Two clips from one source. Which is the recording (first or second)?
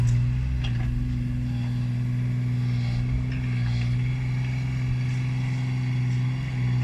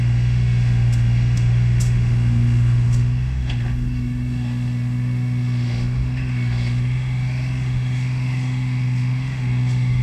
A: first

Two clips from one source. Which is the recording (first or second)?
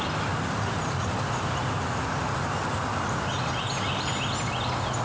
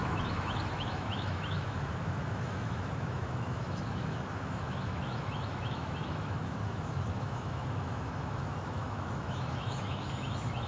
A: first